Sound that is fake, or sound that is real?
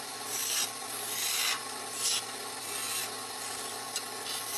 real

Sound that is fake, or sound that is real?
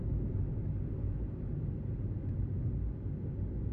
real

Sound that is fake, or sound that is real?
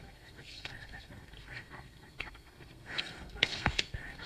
fake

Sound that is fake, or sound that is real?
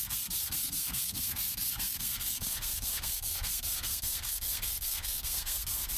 fake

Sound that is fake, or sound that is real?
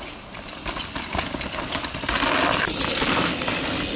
real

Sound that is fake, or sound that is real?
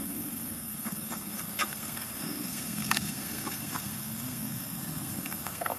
fake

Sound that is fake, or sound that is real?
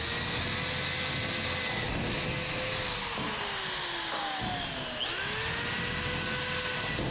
real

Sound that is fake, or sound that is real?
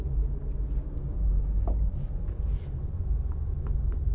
real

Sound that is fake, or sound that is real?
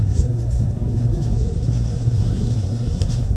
fake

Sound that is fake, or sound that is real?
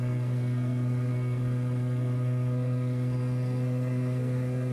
fake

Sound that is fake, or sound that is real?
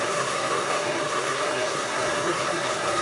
fake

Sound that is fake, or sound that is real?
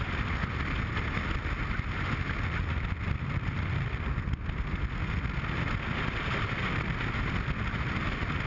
real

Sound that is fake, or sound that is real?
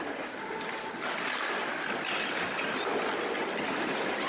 real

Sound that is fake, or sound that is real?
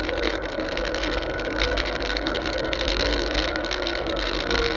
fake